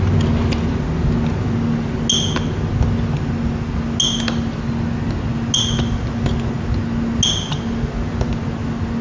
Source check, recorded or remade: recorded